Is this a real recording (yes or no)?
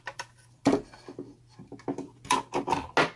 yes